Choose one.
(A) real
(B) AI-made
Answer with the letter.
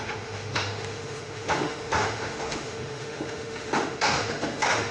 B